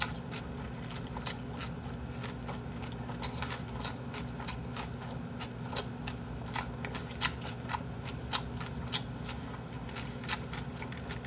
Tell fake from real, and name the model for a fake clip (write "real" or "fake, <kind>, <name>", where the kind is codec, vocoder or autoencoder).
real